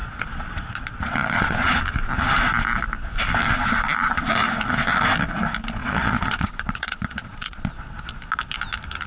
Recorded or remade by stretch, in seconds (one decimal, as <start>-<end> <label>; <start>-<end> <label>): 0.0-1.7 remade; 1.7-5.8 recorded; 5.8-7.7 remade; 7.7-9.1 recorded

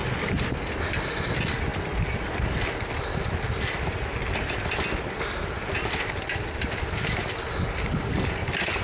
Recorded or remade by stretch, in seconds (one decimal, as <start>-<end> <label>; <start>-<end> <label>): 0.0-8.8 recorded